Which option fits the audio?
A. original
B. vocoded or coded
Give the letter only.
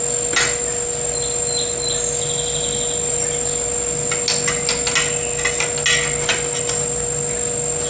A